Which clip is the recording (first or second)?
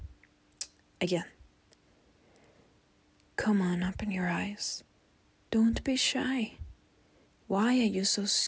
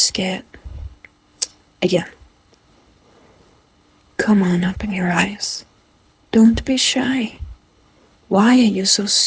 first